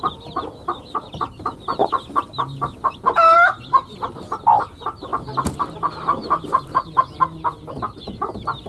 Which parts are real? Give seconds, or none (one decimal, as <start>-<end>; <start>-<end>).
0.0-8.7